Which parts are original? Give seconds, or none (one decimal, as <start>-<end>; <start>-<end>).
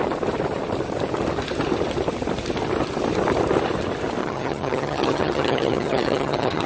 0.0-4.2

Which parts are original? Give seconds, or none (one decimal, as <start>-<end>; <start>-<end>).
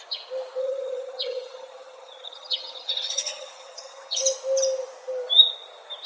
0.0-0.6; 4.2-6.1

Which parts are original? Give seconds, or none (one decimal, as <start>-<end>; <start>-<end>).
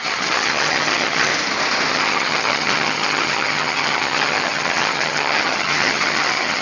1.3-1.9